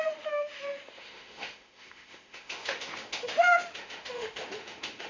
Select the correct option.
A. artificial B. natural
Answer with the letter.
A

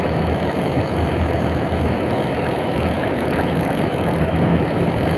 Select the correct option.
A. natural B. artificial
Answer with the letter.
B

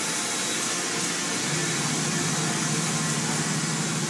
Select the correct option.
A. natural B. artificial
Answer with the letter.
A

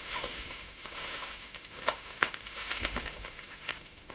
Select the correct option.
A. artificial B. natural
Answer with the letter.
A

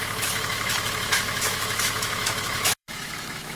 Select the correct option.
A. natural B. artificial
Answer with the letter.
B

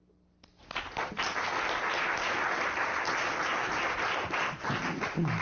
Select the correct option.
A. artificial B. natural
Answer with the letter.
B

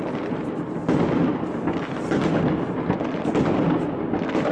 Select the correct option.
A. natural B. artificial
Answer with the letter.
A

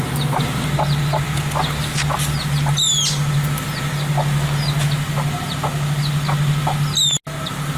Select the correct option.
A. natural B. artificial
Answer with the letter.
A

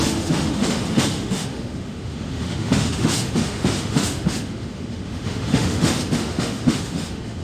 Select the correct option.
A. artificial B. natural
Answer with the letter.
A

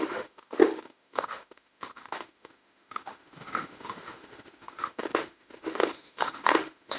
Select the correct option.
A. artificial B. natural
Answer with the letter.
A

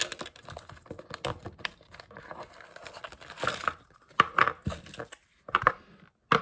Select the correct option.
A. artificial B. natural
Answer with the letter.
B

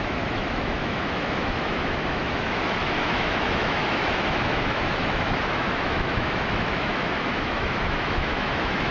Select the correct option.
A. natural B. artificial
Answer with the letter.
B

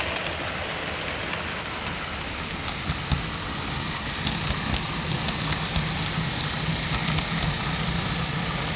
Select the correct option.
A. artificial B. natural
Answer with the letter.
B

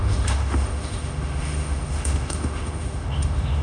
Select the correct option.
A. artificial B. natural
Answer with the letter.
A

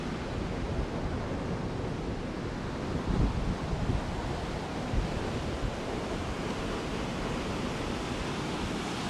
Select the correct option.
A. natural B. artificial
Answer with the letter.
A